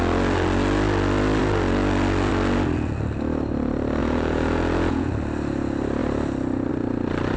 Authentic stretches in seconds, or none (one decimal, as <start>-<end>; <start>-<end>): 0.0-4.0; 5.1-7.4